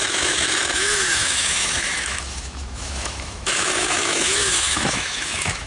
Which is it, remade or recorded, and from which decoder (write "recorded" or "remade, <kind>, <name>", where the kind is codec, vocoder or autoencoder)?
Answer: remade, autoencoder, DAC-VAE